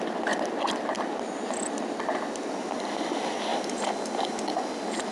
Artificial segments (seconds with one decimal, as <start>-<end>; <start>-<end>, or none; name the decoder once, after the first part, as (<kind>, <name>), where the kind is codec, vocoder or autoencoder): none